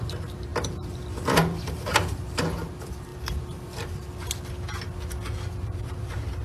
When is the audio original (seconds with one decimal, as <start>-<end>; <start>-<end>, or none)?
0.0-6.4